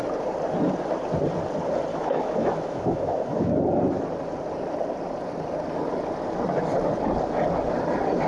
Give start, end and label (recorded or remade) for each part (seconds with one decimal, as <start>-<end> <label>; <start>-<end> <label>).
0.0-1.9 recorded; 1.9-3.5 remade; 3.5-8.3 recorded